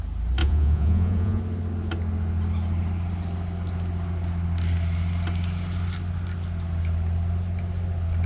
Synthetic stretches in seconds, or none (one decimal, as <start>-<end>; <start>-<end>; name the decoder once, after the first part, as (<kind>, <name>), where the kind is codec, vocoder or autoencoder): 0.4-1.4 (vocoder, Vocos)